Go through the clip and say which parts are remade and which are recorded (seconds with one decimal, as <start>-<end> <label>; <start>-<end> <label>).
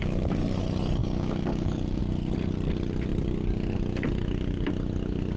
0.0-0.6 remade; 0.6-1.0 recorded; 1.0-2.0 remade; 2.0-5.4 recorded